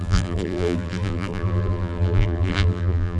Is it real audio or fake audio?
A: fake